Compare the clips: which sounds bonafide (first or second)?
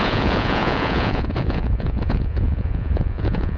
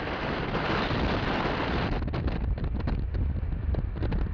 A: second